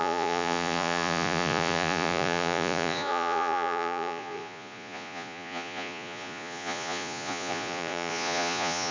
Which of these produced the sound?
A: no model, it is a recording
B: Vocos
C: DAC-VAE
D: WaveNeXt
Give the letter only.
B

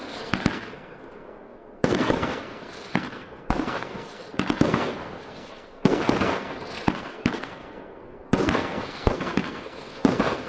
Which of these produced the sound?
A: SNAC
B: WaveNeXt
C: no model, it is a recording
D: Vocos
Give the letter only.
A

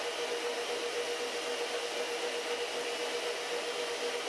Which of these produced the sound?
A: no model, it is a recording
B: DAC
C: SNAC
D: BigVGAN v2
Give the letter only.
A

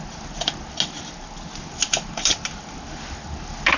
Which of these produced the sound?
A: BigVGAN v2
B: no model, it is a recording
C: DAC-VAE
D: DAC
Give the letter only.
B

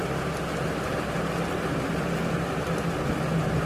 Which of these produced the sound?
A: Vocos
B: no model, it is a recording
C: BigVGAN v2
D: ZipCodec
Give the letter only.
B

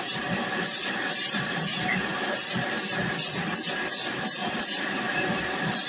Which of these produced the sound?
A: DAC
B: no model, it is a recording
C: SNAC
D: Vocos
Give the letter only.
B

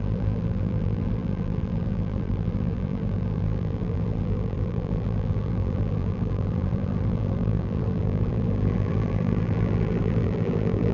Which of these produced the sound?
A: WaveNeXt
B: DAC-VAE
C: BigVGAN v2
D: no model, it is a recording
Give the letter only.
C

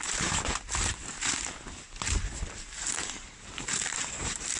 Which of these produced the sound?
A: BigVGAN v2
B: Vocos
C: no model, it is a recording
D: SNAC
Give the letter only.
A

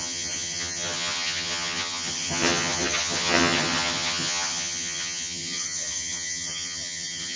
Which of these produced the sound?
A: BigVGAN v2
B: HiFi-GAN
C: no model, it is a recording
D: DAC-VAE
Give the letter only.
B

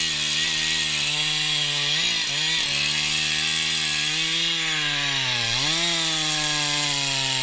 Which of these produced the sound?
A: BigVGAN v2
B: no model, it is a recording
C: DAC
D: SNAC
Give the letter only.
B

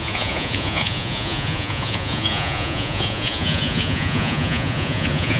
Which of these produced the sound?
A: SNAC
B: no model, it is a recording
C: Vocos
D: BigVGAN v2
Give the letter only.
C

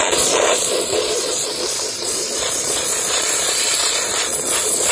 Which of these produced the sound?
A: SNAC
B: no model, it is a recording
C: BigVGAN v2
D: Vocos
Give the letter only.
D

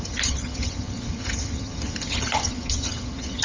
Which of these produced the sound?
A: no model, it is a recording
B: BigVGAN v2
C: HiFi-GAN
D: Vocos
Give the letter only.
C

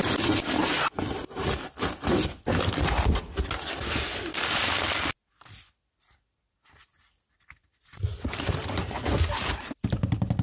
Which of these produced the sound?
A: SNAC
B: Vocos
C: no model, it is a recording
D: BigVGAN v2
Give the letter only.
C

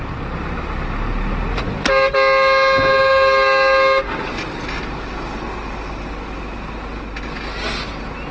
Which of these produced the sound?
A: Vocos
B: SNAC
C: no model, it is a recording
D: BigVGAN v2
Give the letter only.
C